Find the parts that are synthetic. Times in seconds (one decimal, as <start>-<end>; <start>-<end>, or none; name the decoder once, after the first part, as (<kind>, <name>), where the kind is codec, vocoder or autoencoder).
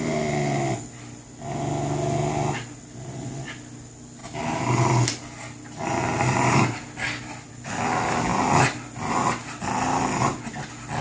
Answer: none